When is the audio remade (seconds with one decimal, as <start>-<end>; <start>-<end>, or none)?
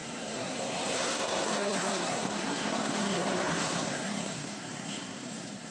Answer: 0.0-5.7